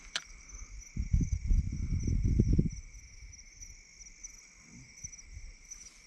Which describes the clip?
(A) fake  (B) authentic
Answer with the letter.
B